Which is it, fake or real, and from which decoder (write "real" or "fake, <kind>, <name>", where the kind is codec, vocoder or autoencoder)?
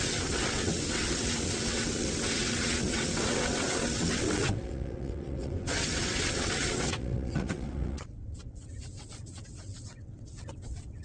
fake, vocoder, WaveNeXt